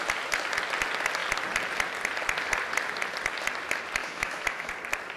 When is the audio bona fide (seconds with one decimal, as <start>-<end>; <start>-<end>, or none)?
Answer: 0.0-4.0; 4.7-5.2